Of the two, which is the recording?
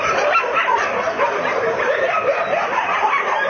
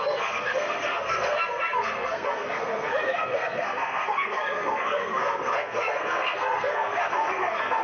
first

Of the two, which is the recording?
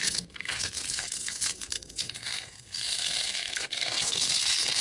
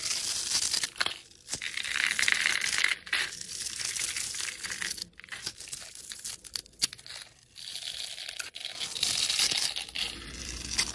second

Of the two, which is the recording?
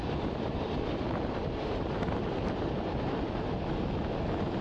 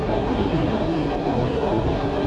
first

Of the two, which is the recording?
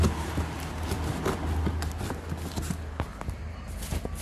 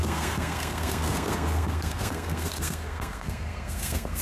first